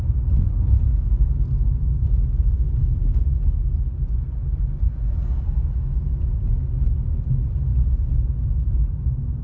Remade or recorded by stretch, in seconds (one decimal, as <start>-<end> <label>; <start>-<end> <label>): 0.0-9.4 recorded